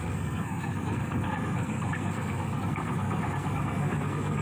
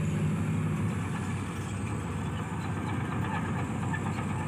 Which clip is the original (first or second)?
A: second